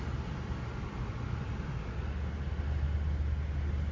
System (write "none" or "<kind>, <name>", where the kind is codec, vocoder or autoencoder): none